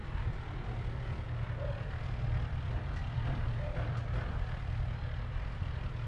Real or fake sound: real